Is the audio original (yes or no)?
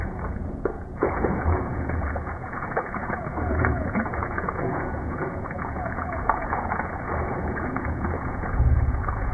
no